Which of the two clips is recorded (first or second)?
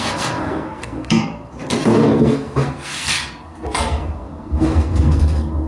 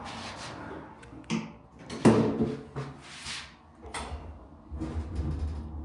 second